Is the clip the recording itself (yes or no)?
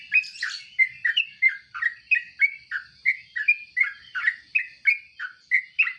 yes